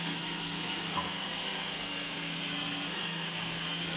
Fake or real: fake